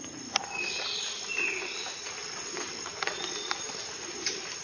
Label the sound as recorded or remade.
recorded